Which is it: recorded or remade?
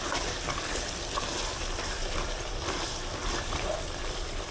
remade